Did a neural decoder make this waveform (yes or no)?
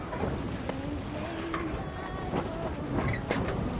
no